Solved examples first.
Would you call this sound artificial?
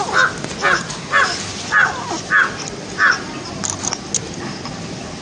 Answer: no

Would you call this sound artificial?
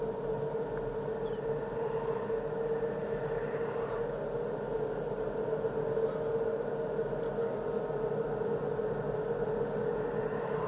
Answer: no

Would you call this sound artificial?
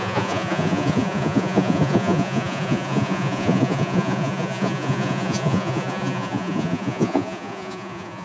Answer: yes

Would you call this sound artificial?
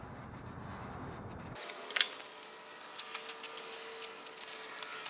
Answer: no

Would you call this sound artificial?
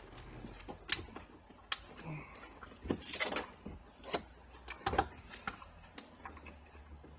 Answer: no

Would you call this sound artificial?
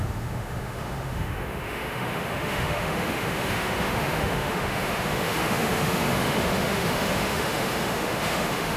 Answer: yes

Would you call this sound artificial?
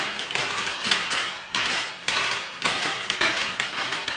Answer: yes